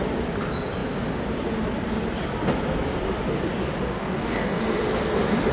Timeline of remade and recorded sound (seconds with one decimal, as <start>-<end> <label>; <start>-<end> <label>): 0.0-4.0 recorded; 4.0-4.6 remade; 4.6-5.5 recorded